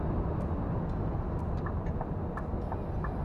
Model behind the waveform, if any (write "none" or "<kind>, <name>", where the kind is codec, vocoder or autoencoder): none